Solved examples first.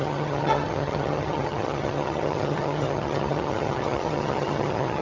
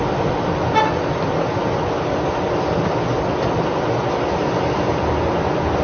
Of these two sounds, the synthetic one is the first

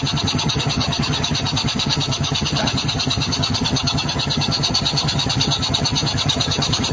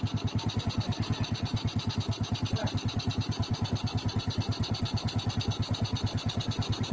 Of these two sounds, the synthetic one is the first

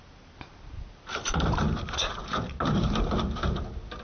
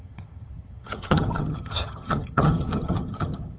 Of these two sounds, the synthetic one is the second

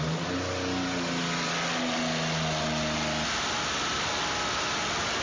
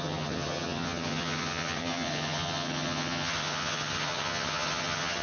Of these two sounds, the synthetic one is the second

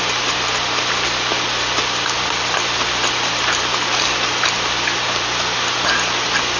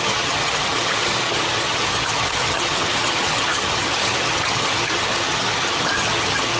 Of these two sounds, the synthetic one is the second